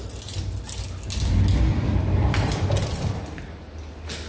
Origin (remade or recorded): recorded